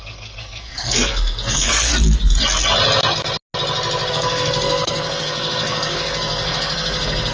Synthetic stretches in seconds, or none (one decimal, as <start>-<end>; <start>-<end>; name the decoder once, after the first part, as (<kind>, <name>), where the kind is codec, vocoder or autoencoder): 0.0-1.9 (codec, SNAC); 4.1-7.3